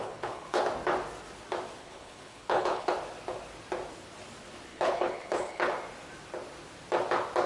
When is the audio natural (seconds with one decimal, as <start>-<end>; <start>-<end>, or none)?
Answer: 0.6-1.8; 2.9-4.7; 5.7-7.5

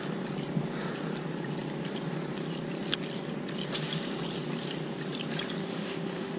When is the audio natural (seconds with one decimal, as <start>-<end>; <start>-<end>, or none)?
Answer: 0.0-5.6

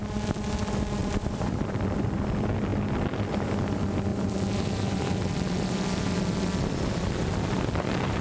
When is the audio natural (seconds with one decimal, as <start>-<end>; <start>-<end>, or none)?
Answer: 0.0-1.0; 2.2-4.1

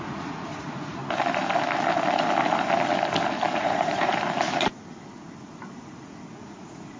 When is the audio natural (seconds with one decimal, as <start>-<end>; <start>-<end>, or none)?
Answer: 1.0-3.6; 4.1-5.7

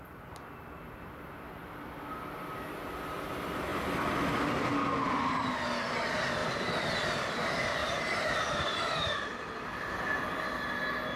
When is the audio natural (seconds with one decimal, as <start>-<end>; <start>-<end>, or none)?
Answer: 0.0-7.8; 8.9-11.2

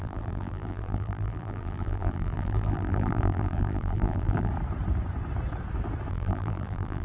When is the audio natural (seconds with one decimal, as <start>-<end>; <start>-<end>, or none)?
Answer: 4.5-6.1